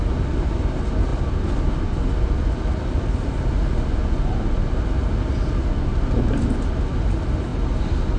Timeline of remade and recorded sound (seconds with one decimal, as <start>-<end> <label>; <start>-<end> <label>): 0.0-8.2 recorded